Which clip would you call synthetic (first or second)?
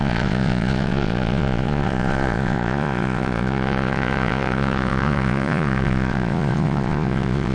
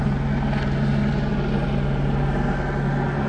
first